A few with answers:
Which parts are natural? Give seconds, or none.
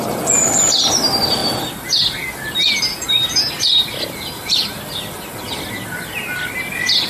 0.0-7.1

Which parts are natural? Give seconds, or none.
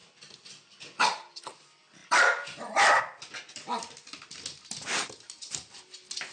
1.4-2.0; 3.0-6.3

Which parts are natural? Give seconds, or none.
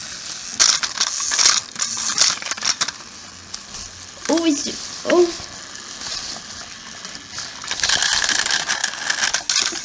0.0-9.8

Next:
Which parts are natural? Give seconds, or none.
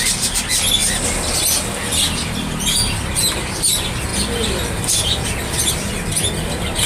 0.0-6.9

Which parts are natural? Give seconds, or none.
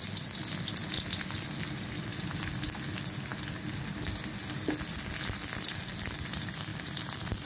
0.0-6.7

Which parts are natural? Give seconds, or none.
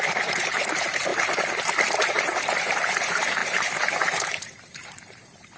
1.1-2.1